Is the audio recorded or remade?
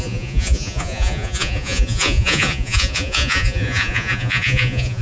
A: remade